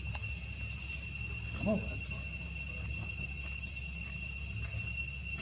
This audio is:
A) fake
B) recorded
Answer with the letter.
B